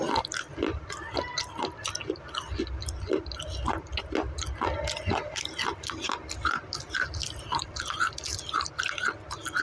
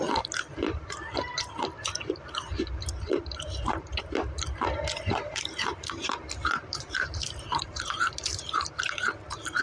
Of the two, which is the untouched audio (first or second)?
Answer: first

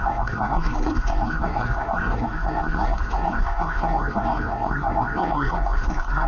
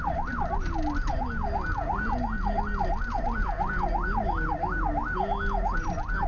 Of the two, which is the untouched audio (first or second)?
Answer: second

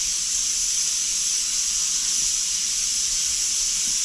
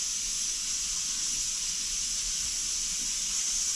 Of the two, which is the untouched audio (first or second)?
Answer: first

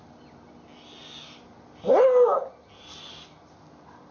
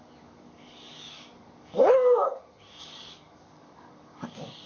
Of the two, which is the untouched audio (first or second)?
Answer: first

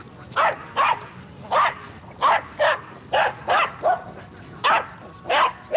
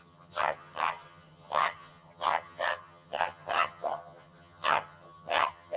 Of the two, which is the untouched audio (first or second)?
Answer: first